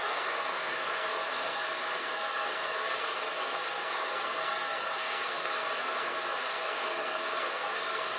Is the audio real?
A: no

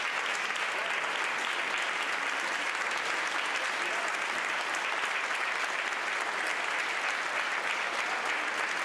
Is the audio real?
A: yes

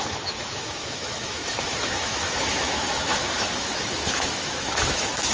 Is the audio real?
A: no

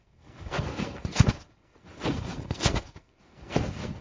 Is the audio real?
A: no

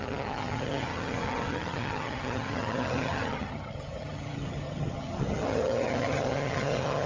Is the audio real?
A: no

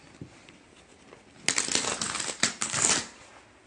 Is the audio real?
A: yes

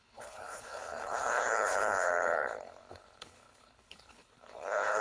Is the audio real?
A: no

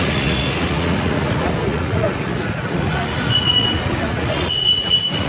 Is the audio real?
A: no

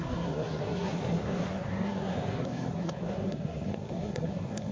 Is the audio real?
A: no